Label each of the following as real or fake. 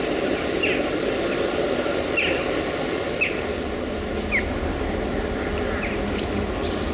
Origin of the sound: real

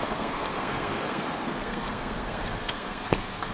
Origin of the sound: fake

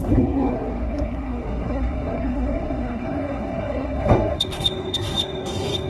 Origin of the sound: fake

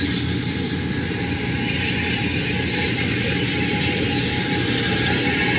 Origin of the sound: real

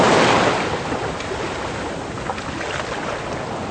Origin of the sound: real